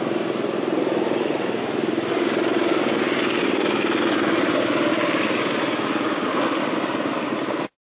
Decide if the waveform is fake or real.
real